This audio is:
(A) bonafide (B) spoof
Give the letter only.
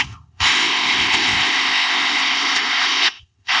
B